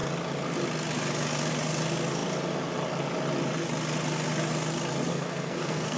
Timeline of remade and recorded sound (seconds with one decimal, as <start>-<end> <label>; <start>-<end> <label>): 0.0-5.1 recorded; 5.1-6.0 remade